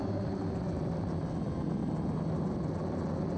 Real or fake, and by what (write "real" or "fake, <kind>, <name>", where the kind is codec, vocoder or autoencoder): real